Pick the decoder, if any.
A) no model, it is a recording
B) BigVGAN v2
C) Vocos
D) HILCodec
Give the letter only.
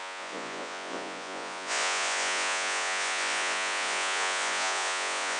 C